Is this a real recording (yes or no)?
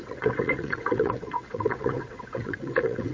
no